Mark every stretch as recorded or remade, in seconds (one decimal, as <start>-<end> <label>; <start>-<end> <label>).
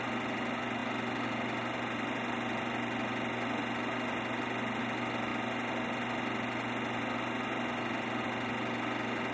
0.0-9.3 recorded